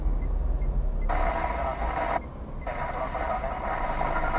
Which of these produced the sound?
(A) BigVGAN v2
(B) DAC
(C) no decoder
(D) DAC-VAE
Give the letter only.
C